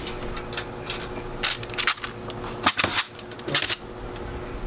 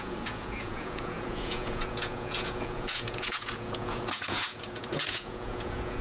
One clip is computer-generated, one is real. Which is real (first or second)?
first